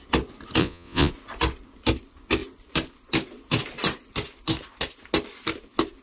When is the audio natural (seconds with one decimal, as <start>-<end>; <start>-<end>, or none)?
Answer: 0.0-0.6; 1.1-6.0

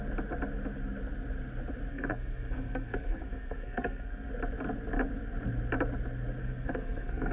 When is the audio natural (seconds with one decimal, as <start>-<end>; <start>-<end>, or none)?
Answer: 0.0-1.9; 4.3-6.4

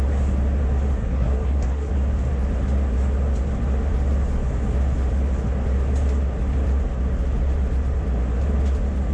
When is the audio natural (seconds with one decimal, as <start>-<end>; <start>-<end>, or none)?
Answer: 0.0-1.0; 1.9-9.1

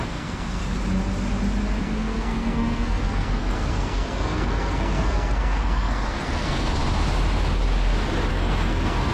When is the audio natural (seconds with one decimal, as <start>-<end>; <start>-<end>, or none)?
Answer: 0.6-1.8; 6.8-8.3

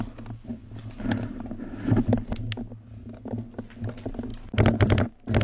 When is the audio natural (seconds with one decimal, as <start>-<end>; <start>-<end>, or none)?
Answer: 0.0-5.4

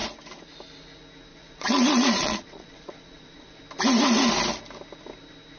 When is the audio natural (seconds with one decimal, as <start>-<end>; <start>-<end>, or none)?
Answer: 0.0-1.3; 3.6-5.6

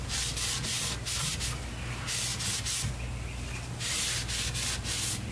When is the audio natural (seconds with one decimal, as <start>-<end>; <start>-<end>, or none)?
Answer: 0.0-5.3

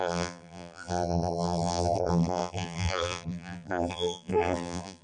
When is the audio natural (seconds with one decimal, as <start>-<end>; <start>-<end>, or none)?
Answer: none